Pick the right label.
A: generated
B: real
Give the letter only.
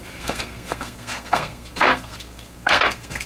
A